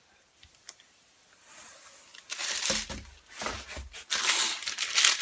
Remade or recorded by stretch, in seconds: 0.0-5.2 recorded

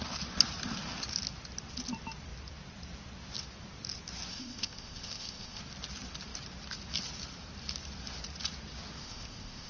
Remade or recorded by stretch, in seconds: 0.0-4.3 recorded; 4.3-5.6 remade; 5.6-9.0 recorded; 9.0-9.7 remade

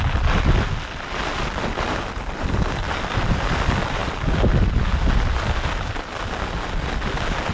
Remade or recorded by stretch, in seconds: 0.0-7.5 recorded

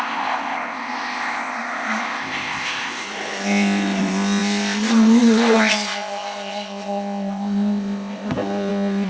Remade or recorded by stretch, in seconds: 0.0-9.1 remade